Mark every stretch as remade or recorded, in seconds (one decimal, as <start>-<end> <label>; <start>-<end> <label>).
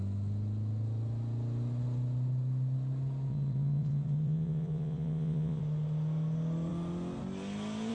0.0-3.3 recorded; 3.3-5.6 remade; 5.6-7.9 recorded